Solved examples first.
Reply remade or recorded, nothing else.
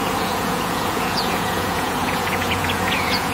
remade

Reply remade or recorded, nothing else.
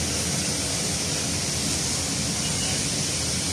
recorded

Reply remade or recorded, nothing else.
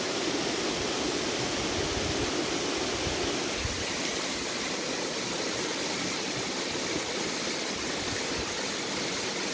recorded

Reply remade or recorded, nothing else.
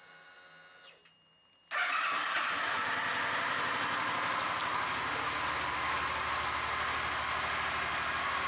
recorded